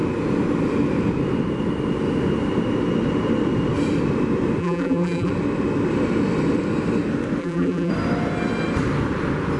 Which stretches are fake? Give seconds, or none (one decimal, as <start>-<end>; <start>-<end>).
4.6-5.3; 7.4-7.9